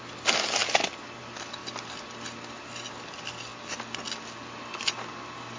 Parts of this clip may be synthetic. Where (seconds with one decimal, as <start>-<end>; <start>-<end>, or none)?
none